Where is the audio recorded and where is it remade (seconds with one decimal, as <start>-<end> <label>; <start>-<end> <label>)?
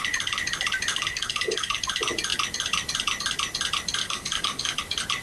0.0-0.9 recorded; 0.9-1.8 remade; 1.8-4.0 recorded; 4.0-4.8 remade; 4.8-5.2 recorded